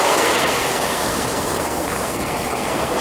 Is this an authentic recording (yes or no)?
no